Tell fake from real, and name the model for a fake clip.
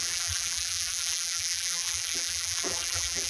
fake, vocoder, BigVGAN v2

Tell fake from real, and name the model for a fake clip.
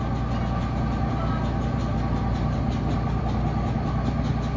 real